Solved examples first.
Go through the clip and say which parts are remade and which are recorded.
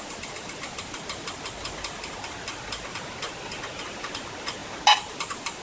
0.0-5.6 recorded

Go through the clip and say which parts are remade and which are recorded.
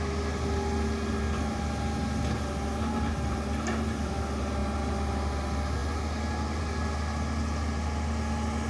0.0-8.7 recorded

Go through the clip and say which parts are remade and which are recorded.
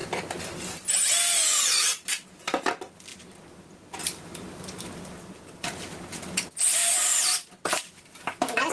0.0-8.7 recorded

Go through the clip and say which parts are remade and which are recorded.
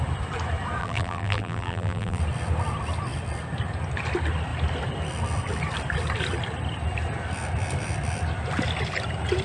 0.0-0.8 recorded; 0.8-2.2 remade; 2.2-9.4 recorded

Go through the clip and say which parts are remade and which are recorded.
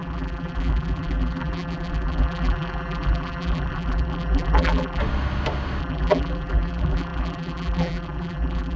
0.0-5.0 remade; 5.0-5.8 recorded; 5.8-8.8 remade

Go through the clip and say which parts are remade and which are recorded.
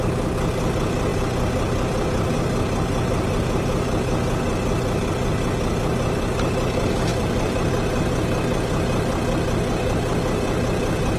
0.0-7.1 recorded; 7.1-7.7 remade; 7.7-11.2 recorded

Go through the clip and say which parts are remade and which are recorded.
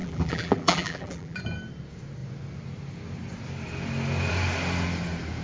0.0-1.4 remade; 1.4-5.4 recorded